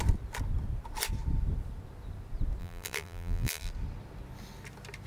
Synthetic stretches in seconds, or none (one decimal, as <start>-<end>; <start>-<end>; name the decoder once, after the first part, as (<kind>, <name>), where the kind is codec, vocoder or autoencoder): 2.6-3.7 (vocoder, BigVGAN v2)